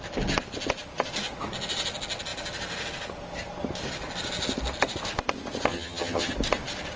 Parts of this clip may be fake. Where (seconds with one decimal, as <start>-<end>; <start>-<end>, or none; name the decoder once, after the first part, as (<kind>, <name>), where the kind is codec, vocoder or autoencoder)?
5.7-6.3 (vocoder, HiFi-GAN)